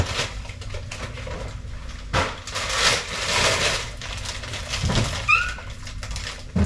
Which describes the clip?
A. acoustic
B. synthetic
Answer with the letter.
A